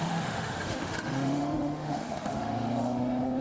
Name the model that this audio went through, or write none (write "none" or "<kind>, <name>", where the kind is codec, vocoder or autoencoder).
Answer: autoencoder, DAC-VAE